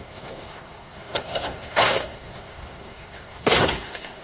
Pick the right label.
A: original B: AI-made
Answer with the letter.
B